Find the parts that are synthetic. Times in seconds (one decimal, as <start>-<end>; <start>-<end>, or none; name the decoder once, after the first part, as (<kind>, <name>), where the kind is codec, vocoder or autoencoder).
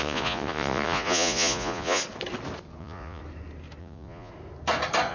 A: 0.0-2.0 (vocoder, Vocos); 2.8-3.2; 3.8-4.3